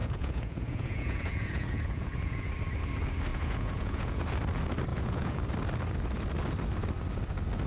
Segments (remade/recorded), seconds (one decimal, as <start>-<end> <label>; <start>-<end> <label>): 0.0-2.5 remade; 2.5-3.3 recorded; 3.3-4.2 remade; 4.2-4.9 recorded; 4.9-5.4 remade; 5.4-7.7 recorded